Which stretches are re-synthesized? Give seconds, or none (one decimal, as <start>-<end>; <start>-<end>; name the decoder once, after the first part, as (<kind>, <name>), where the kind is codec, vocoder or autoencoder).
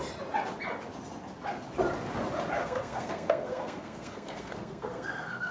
2.6-5.5 (codec, SNAC)